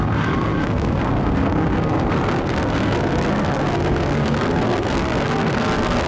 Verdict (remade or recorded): remade